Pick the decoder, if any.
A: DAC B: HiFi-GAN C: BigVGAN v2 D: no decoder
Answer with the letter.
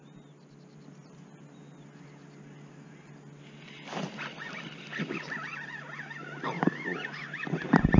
D